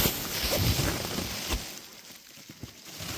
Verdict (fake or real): real